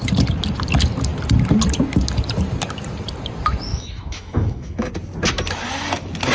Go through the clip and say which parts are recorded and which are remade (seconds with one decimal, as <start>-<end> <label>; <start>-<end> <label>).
0.0-3.7 recorded; 3.7-4.9 remade; 4.9-6.3 recorded